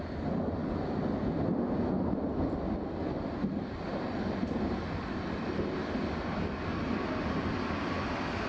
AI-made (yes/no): no